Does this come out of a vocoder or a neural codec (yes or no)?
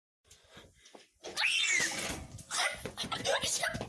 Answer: yes